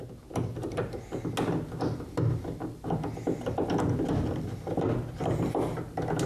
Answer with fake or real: real